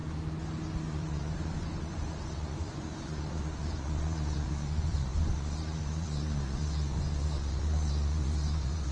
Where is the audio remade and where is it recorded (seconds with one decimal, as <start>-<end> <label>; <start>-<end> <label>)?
0.0-0.9 recorded; 0.9-8.9 remade